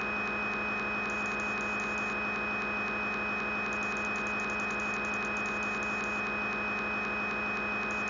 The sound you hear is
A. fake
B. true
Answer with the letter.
B